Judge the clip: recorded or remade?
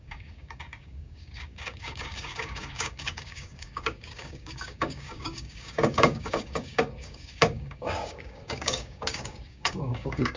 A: remade